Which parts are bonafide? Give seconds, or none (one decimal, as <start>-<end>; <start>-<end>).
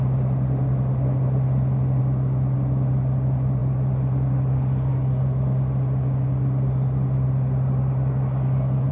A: 0.0-8.9